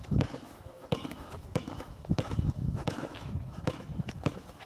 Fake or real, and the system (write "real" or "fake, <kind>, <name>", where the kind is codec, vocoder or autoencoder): fake, autoencoder, DAC-VAE